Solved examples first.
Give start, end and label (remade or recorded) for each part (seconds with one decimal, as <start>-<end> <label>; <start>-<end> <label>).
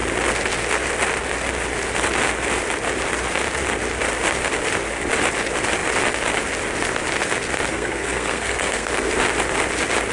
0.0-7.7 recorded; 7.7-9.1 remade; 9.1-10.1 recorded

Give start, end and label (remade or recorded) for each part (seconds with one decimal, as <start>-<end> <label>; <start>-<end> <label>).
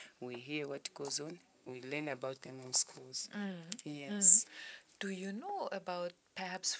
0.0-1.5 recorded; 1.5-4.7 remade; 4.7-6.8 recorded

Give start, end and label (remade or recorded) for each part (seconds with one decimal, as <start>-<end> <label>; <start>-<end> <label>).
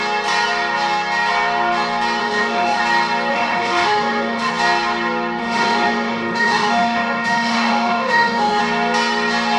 0.0-2.2 recorded; 2.2-2.8 remade; 2.8-3.3 recorded; 3.3-4.5 remade; 4.5-5.4 recorded; 5.4-8.6 remade; 8.6-9.6 recorded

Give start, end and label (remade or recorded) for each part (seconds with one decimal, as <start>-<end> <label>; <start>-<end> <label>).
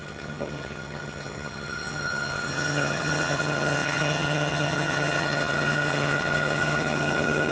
0.0-7.5 remade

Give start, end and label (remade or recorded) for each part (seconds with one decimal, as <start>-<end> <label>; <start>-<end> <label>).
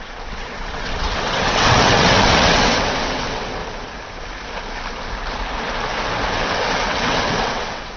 0.0-3.6 remade; 3.6-6.3 recorded; 6.3-8.0 remade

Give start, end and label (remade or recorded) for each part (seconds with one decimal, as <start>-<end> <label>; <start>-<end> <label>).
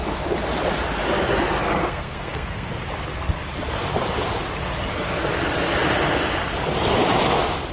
0.0-1.8 recorded; 1.8-2.7 remade; 2.7-7.7 recorded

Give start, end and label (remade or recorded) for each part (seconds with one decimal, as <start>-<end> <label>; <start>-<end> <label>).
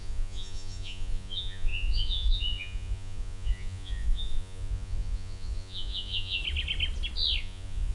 0.0-6.4 remade; 6.4-7.4 recorded; 7.4-7.9 remade